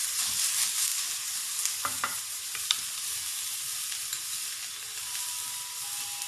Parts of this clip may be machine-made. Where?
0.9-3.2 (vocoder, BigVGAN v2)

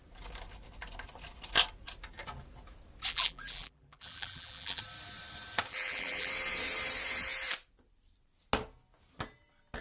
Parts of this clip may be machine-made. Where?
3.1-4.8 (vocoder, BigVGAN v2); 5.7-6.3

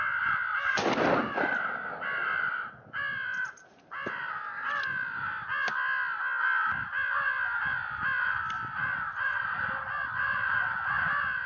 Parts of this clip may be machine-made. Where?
none

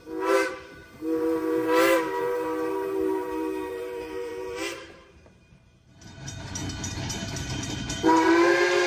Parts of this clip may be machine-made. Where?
0.0-6.6 (vocoder, BigVGAN v2); 7.1-8.9

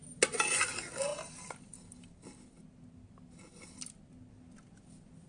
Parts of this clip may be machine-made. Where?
none

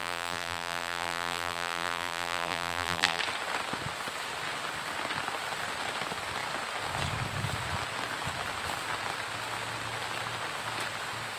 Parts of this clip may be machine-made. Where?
0.0-3.2 (vocoder, BigVGAN v2)

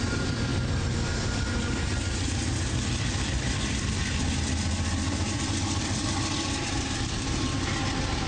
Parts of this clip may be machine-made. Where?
0.0-0.5 (vocoder, BigVGAN v2); 2.7-8.3